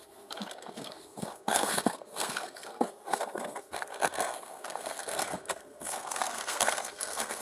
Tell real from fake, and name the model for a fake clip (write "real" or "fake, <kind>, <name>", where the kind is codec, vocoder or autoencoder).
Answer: fake, codec, SNAC